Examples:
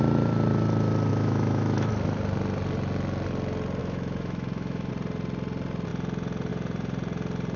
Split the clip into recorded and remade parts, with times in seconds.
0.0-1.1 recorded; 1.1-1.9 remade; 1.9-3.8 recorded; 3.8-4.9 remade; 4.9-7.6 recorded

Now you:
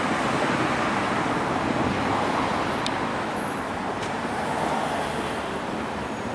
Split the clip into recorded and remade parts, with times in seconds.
0.0-3.1 recorded; 3.1-3.8 remade; 3.8-6.3 recorded

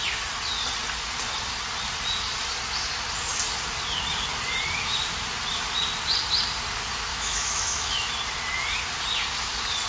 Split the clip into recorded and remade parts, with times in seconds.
0.0-7.1 recorded; 7.1-8.1 remade; 8.1-9.9 recorded

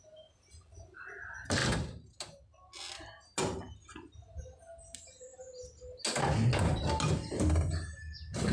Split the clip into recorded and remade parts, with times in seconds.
0.0-8.5 recorded

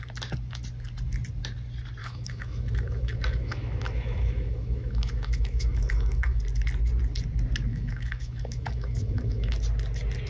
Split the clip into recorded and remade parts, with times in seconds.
0.0-2.0 recorded; 2.0-6.4 remade; 6.4-7.7 recorded; 7.7-9.5 remade; 9.5-10.3 recorded

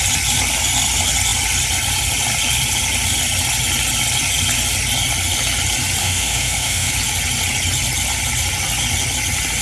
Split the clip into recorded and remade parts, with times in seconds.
0.0-6.0 recorded; 6.0-6.9 remade; 6.9-9.6 recorded